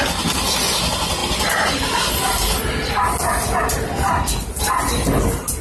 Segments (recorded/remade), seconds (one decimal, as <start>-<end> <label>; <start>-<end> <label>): 0.0-5.6 recorded